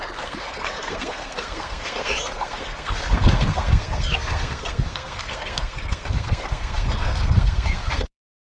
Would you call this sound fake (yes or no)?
yes